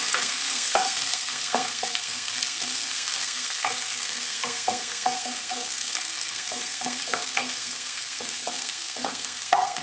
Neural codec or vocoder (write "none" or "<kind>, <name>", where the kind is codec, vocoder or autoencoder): codec, SNAC